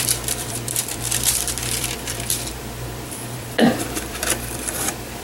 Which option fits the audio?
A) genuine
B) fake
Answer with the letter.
B